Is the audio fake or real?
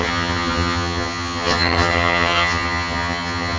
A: fake